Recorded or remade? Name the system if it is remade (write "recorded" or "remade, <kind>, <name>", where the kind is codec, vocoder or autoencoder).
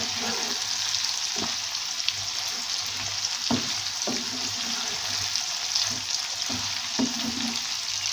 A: recorded